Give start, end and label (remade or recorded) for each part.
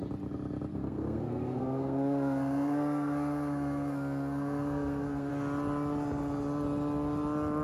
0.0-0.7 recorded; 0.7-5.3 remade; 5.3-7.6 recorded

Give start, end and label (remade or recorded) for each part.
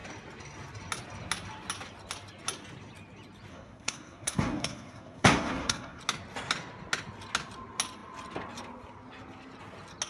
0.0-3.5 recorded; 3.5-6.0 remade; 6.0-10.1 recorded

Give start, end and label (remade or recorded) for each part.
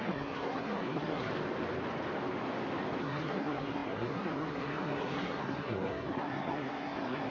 0.0-1.3 remade; 1.3-3.0 recorded; 3.0-7.3 remade